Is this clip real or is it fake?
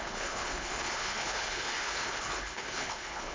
fake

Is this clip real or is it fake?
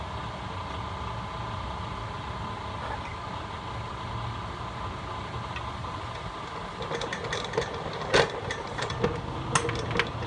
real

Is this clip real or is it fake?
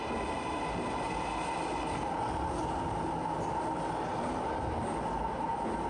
real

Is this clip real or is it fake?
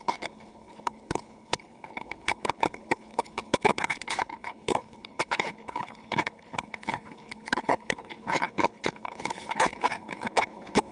fake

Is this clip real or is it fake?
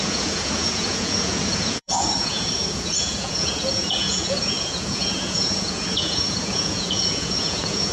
fake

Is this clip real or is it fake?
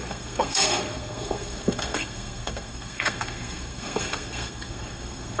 fake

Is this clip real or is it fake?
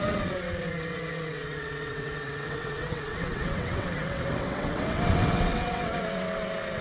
fake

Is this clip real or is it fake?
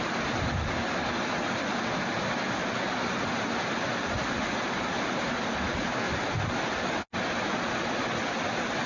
real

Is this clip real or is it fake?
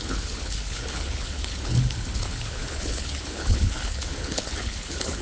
fake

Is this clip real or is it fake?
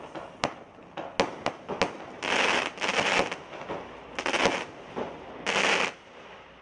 real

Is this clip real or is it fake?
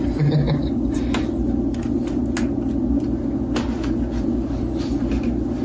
real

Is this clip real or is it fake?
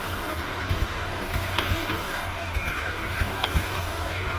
fake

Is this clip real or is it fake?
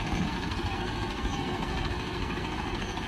fake